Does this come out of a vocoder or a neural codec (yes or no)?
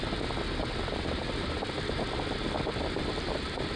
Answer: no